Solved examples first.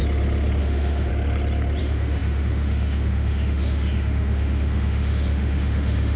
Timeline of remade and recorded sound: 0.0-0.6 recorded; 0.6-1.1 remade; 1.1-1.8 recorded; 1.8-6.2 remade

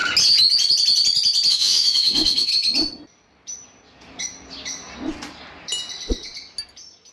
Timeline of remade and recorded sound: 0.0-1.5 recorded; 1.5-2.5 remade; 2.5-7.1 recorded